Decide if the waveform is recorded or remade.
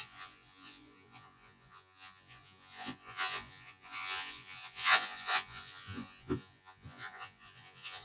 remade